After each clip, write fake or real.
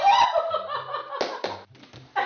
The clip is real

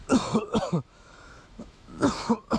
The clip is fake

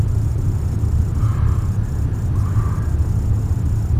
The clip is real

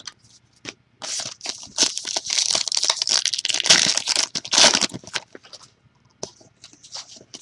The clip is real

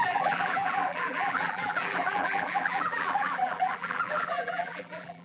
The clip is fake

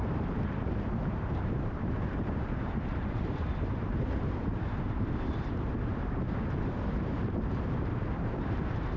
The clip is fake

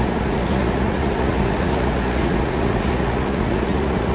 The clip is fake